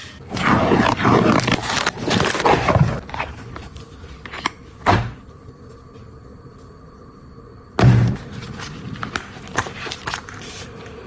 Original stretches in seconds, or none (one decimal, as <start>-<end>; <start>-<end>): 3.7-4.4